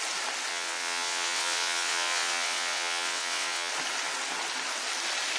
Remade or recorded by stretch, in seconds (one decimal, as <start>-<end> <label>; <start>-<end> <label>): 0.0-0.5 recorded; 0.5-3.7 remade; 3.7-5.4 recorded